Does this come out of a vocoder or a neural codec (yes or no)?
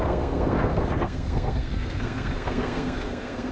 yes